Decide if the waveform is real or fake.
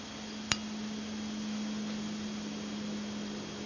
real